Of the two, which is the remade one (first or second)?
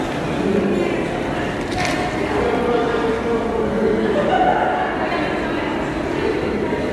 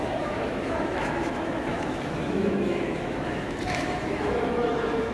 second